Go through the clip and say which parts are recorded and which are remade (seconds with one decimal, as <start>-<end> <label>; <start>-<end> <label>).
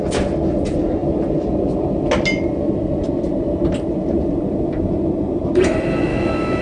0.0-6.1 recorded; 6.1-6.6 remade